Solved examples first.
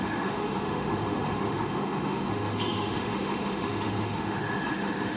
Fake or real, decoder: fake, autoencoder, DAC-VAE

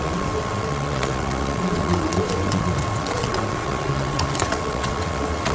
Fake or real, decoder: fake, vocoder, WaveNeXt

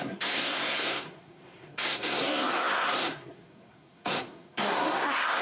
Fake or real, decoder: fake, codec, SNAC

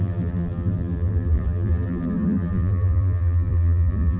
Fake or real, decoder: fake, vocoder, BigVGAN v2